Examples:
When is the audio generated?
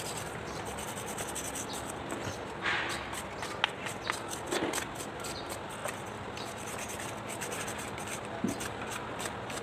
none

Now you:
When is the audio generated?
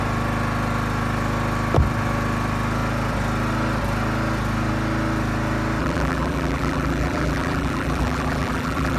5.8-9.0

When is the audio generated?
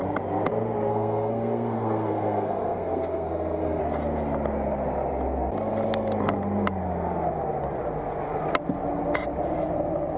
0.9-3.8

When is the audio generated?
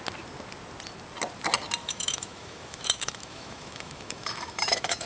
1.8-5.1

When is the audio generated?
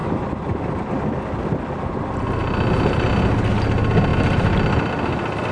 2.4-3.2; 4.1-5.5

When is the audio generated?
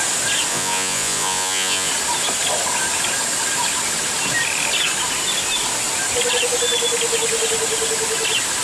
0.5-1.9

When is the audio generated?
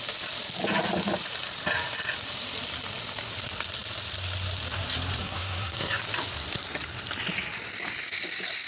5.2-6.0